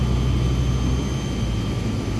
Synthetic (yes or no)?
no